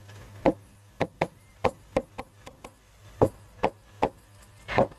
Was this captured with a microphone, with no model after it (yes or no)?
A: yes